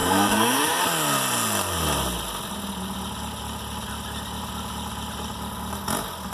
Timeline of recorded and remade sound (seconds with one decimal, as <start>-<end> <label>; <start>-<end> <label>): 0.0-0.8 remade; 0.8-6.3 recorded